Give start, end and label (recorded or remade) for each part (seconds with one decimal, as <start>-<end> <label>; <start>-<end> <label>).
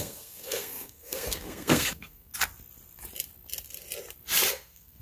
0.0-2.3 remade; 2.3-4.5 recorded; 4.5-5.0 remade